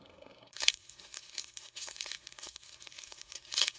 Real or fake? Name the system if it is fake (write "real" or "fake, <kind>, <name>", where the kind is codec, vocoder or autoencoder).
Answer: fake, codec, SNAC